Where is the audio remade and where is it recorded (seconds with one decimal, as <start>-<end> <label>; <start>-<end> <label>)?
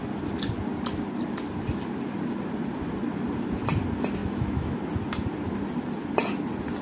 0.0-4.2 recorded; 4.2-4.8 remade; 4.8-6.8 recorded